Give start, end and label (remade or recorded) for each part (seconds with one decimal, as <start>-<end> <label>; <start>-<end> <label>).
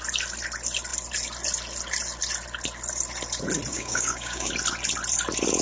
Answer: 0.0-3.7 recorded; 3.7-4.5 remade; 4.5-5.6 recorded